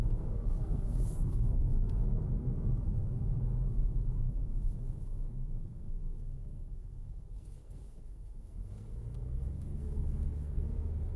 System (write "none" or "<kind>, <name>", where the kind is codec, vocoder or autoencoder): codec, SNAC